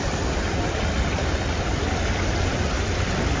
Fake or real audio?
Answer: real